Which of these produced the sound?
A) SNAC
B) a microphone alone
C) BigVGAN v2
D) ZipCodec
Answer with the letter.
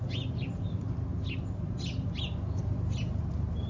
B